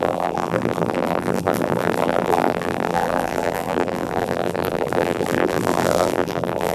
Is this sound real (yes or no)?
no